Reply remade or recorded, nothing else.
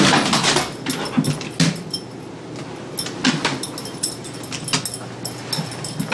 recorded